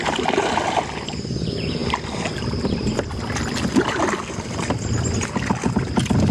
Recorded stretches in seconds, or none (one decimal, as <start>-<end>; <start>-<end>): 0.0-6.3